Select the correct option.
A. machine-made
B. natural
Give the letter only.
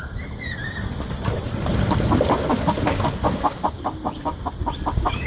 B